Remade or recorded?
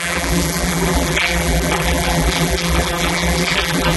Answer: remade